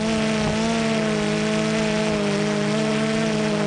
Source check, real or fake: real